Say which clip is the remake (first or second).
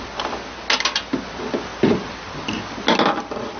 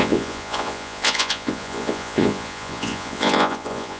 second